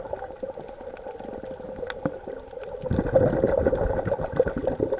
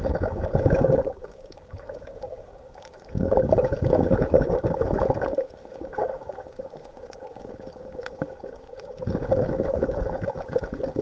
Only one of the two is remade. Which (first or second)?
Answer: second